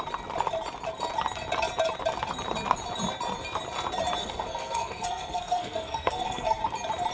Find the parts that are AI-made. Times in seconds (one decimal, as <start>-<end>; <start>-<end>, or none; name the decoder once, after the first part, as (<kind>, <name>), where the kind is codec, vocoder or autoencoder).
4.2-6.6 (codec, SNAC)